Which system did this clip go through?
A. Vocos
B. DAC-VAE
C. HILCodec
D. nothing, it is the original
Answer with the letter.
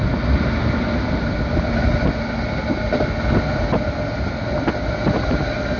D